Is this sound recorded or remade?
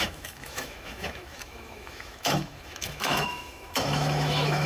remade